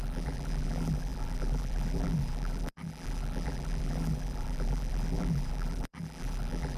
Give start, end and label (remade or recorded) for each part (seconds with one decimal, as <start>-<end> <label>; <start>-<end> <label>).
0.0-6.8 remade